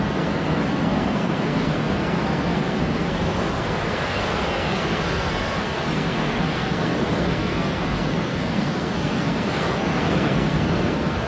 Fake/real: fake